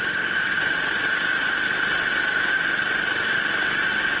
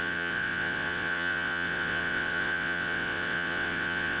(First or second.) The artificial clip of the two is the second